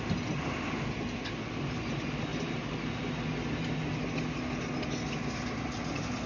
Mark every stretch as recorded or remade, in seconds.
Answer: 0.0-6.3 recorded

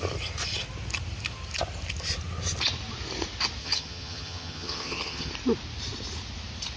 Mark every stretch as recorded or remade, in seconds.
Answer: 0.0-3.6 recorded; 3.6-5.3 remade; 5.3-6.8 recorded